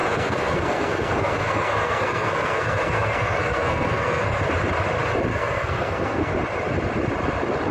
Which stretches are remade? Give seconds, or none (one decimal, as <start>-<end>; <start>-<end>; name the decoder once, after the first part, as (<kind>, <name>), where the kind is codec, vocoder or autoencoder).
0.0-4.4 (codec, SNAC); 5.3-6.3